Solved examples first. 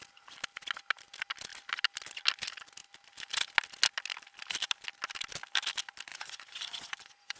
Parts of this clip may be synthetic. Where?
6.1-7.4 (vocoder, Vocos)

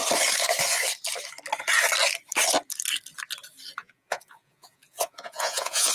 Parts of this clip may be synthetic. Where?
3.8-5.9 (vocoder, Vocos)

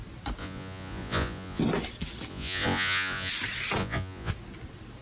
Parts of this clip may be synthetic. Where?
0.4-1.6 (vocoder, Vocos); 2.3-3.3; 3.8-4.3

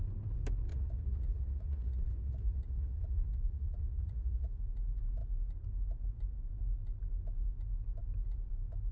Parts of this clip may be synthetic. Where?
0.7-4.6 (vocoder, Vocos)

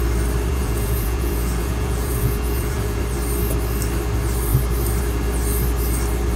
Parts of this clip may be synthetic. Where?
0.5-3.0 (vocoder, Vocos)

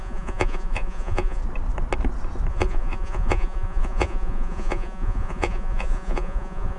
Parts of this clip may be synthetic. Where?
0.0-1.4 (vocoder, Vocos); 2.5-6.8